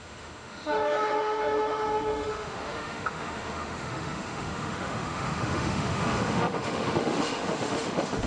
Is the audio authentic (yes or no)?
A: no